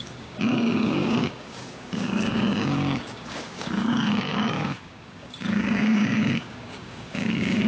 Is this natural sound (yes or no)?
no